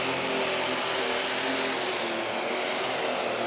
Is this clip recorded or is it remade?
recorded